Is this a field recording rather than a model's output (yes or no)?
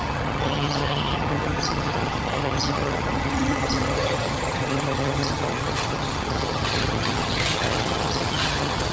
no